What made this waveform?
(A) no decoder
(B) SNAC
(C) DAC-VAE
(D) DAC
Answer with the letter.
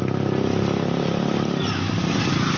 A